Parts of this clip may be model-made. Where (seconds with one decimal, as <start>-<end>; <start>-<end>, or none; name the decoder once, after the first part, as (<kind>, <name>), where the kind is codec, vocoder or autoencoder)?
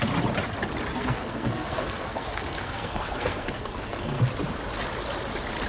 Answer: 0.9-4.2 (codec, SNAC)